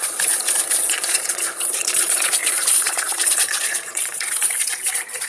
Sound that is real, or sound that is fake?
fake